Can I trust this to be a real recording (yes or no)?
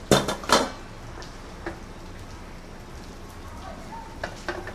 yes